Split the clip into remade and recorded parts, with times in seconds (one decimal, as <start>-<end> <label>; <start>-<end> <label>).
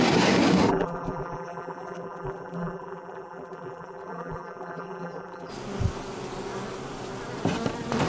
0.0-0.7 recorded; 0.7-5.5 remade; 5.5-8.1 recorded